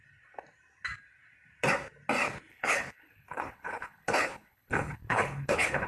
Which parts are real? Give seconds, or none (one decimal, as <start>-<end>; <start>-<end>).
0.0-2.5